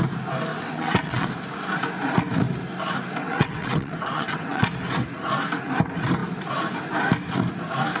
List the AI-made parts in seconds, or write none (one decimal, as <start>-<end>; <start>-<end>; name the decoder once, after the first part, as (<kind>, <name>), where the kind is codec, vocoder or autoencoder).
0.5-1.3 (vocoder, WaveNeXt); 3.2-4.7